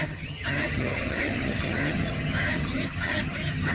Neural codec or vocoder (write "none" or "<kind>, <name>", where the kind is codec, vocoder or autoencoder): vocoder, HiFi-GAN